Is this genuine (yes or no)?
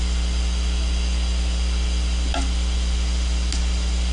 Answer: yes